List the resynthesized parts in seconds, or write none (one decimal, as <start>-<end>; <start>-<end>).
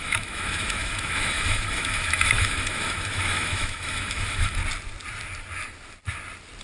0.0-4.6